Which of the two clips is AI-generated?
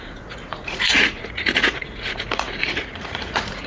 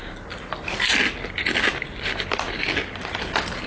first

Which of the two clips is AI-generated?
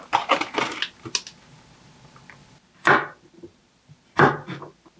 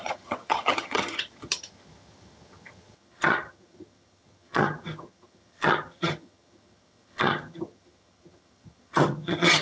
second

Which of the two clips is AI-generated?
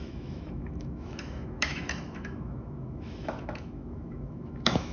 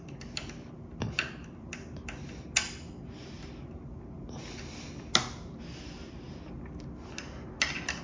first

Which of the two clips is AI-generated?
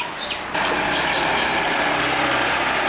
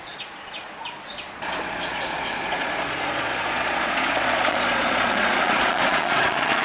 second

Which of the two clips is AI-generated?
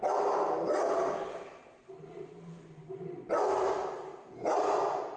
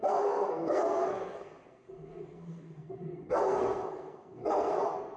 second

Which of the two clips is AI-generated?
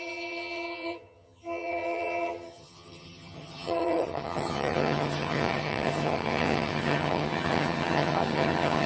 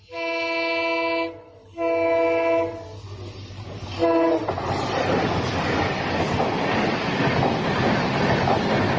first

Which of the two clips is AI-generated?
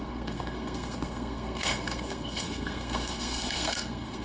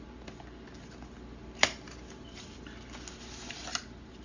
first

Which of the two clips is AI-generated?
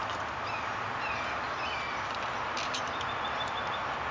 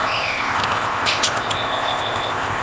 second